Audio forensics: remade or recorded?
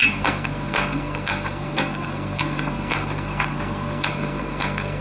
remade